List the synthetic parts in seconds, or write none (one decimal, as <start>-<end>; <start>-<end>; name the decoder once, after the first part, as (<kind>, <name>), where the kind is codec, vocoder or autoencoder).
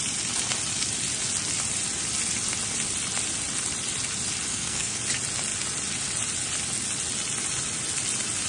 4.5-5.0 (codec, SNAC)